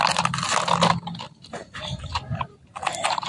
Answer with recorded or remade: recorded